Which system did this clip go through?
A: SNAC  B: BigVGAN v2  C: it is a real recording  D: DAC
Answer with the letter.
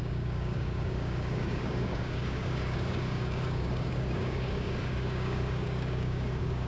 D